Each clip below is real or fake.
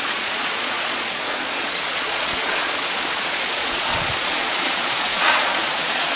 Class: fake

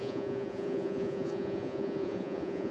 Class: fake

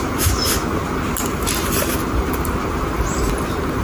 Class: real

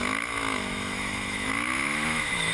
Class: fake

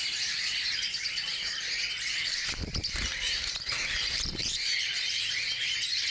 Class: fake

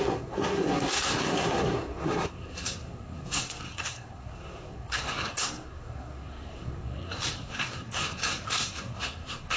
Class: fake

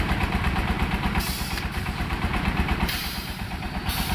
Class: fake